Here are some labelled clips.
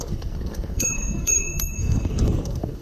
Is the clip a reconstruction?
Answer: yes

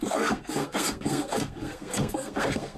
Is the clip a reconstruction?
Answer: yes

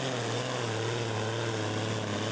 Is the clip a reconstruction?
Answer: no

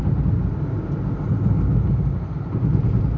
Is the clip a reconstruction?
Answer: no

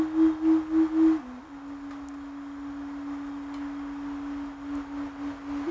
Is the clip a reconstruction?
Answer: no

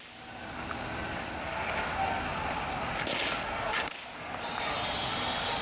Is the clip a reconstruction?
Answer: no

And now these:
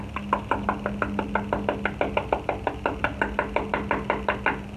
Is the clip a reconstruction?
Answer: no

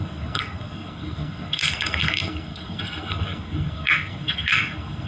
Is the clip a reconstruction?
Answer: yes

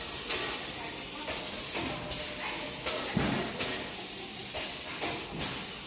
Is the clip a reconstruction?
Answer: no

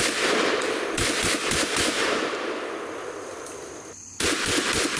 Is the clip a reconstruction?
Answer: no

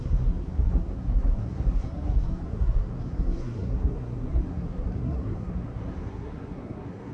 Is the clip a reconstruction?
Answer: yes